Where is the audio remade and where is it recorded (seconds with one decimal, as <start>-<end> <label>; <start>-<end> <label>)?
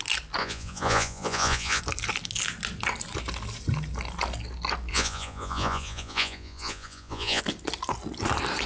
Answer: 0.0-0.4 recorded; 0.4-1.8 remade; 1.8-4.9 recorded; 4.9-7.4 remade; 7.4-8.7 recorded